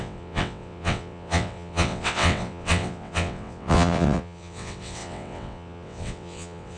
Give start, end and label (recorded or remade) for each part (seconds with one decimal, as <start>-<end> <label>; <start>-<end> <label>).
0.0-6.8 remade